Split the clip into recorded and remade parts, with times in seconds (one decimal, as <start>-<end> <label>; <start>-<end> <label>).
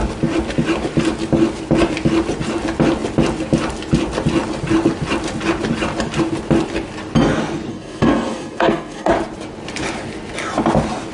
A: 0.0-7.7 recorded; 7.7-9.1 remade; 9.1-11.1 recorded